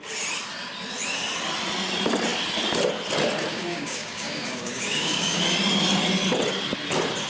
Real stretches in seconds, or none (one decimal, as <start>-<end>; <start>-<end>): 0.0-3.5; 5.4-7.3